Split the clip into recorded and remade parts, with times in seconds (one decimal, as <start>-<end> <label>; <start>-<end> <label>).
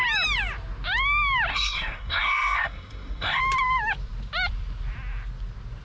0.0-1.5 recorded; 1.5-3.4 remade; 3.4-5.8 recorded